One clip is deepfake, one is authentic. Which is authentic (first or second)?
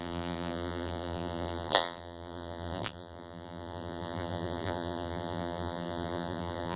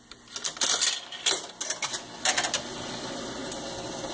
second